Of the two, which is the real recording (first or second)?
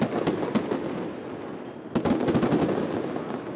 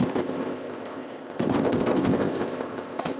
first